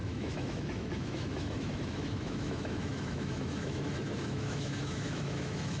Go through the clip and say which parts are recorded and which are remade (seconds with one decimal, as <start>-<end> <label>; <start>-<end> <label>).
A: 0.0-5.8 remade